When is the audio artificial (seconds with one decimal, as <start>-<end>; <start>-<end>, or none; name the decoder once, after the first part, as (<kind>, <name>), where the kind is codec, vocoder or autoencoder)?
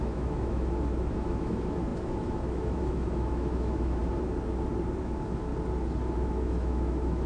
0.0-4.0 (autoencoder, DAC-VAE); 5.0-5.5; 6.2-7.3